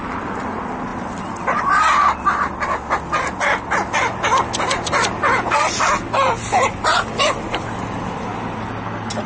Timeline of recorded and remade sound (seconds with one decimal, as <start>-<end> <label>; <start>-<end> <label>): 0.0-4.9 recorded; 4.9-5.7 remade; 5.7-9.3 recorded